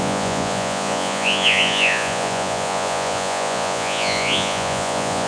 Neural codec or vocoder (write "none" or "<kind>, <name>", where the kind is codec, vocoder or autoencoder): vocoder, Vocos